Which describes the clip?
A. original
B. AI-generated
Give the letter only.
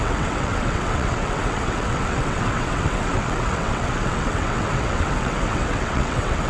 B